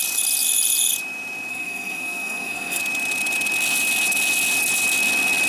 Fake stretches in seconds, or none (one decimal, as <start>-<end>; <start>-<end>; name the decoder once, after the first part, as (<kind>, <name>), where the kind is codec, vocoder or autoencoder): 1.5-2.8 (codec, SNAC)